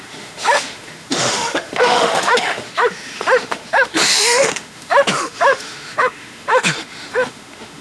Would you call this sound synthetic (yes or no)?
yes